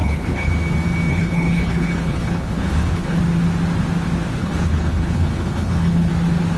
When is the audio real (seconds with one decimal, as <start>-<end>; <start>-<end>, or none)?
0.5-1.1; 3.2-4.4; 6.1-6.6